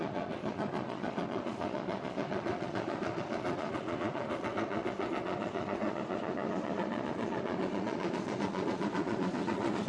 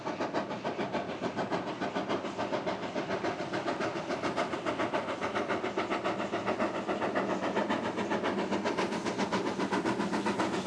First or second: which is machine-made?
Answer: first